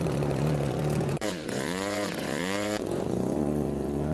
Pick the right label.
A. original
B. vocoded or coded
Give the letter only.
B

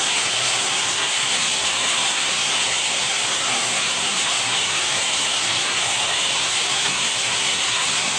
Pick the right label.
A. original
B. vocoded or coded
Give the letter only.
B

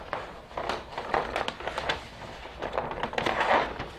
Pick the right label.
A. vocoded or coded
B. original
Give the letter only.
A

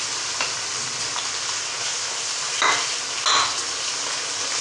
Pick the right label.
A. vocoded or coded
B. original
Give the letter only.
B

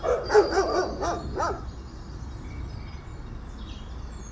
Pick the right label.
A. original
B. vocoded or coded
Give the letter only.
A